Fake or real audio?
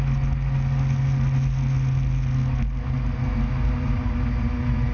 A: real